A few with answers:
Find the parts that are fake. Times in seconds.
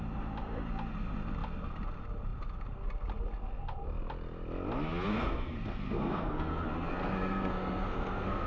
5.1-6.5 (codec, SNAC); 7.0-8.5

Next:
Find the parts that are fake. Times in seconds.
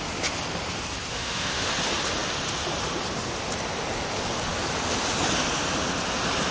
1.1-1.7 (autoencoder, DAC-VAE)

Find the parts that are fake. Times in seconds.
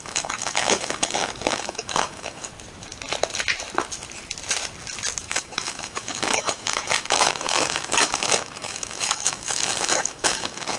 0.0-2.5 (codec, DAC); 5.2-10.8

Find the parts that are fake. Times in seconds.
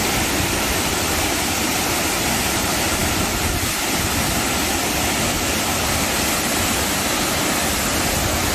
none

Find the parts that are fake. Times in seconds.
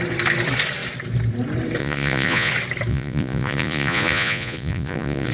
1.8-2.5 (vocoder, Vocos); 2.9-5.3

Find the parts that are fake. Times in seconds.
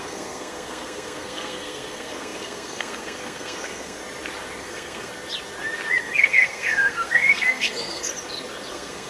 0.0-4.0 (codec, SNAC); 4.6-5.1; 6.0-8.1; 8.7-9.1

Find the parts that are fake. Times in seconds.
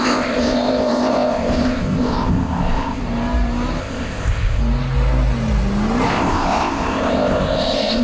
0.0-3.0 (codec, ZipCodec); 3.8-4.6; 6.1-8.0